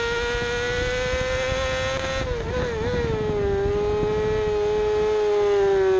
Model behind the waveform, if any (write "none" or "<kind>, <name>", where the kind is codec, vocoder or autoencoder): none